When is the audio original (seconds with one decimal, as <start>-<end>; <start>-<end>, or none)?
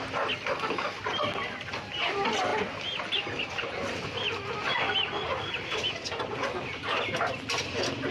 0.0-8.1